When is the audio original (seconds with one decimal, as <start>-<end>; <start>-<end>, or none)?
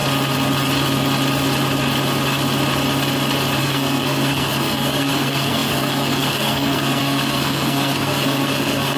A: 0.0-3.6